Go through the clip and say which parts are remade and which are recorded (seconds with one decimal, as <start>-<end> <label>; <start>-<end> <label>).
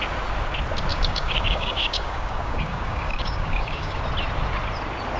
0.0-0.9 recorded; 0.9-4.0 remade; 4.0-5.2 recorded